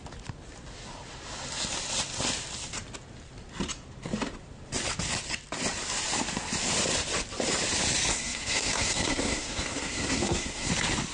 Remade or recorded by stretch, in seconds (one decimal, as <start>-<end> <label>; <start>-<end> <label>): 0.0-8.1 recorded; 8.1-10.7 remade; 10.7-11.1 recorded